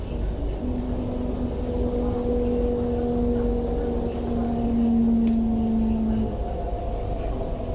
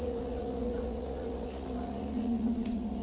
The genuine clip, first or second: first